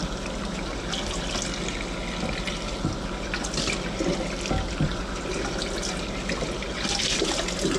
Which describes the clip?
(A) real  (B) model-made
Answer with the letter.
A